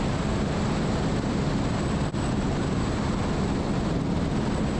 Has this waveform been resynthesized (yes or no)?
no